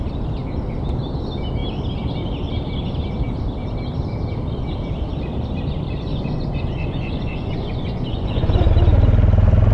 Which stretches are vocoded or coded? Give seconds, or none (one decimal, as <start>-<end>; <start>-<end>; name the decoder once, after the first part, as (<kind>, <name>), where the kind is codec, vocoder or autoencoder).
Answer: 6.1-8.7 (vocoder, Vocos)